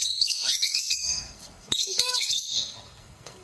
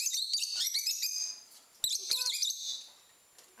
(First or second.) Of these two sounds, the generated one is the first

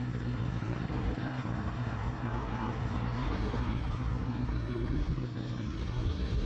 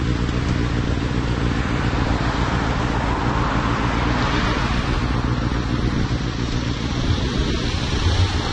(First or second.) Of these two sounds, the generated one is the first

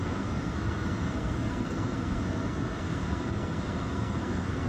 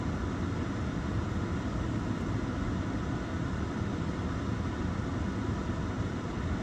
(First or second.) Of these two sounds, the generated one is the first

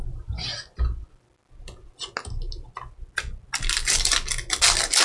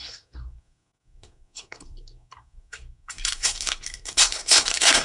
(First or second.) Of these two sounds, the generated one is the second